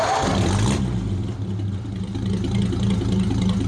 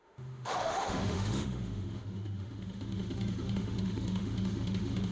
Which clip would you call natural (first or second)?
first